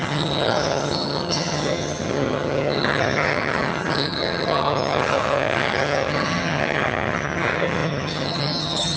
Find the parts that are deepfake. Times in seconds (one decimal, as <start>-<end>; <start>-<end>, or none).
0.0-9.0